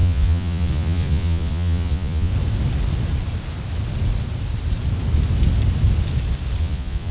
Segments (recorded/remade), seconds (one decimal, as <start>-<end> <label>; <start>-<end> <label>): 0.0-2.3 remade; 2.3-6.6 recorded; 6.6-7.1 remade